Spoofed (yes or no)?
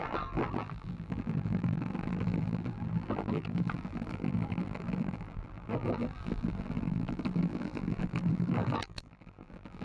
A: yes